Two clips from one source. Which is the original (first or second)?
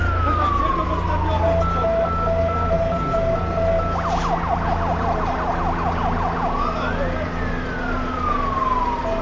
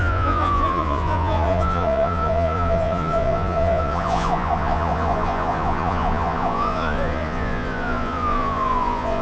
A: first